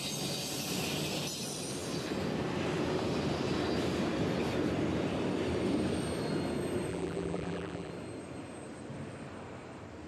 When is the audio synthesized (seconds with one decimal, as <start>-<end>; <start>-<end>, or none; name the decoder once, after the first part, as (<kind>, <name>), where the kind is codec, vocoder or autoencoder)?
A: 6.9-7.9 (vocoder, BigVGAN v2)